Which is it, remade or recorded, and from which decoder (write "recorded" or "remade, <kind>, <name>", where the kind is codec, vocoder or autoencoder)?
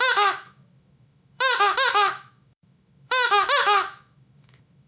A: remade, autoencoder, DAC-VAE